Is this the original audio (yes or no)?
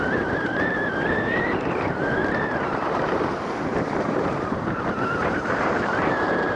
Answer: no